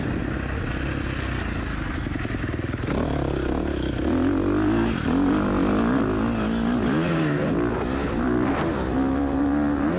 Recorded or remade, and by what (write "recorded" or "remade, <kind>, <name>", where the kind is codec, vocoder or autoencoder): recorded